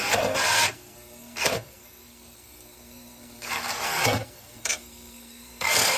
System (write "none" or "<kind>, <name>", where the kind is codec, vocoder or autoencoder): codec, SNAC